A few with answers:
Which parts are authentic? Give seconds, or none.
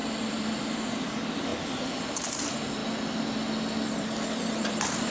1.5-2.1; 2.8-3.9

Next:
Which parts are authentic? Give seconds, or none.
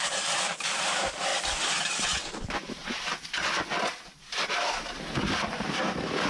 1.3-2.4; 2.8-4.2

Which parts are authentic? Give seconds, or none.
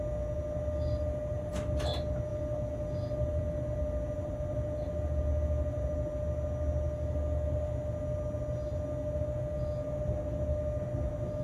0.0-11.4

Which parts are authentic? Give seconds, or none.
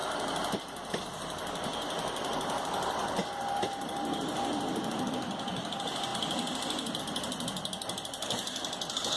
0.0-0.9; 6.1-7.0